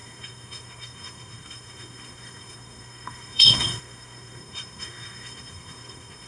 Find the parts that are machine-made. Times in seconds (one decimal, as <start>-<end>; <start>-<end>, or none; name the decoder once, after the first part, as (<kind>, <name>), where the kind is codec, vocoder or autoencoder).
0.0-6.3 (codec, SNAC)